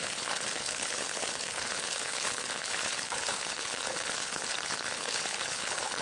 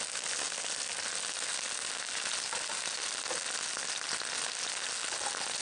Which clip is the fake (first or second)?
first